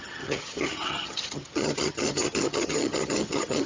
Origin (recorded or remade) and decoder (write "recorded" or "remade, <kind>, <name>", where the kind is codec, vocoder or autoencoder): remade, vocoder, HiFi-GAN